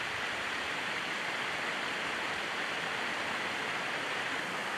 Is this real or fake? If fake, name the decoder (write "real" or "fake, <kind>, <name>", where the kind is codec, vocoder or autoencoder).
real